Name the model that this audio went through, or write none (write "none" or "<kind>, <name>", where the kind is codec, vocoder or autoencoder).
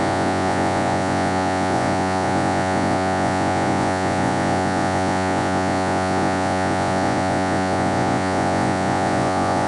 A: vocoder, Vocos